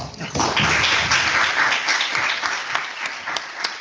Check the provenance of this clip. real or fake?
real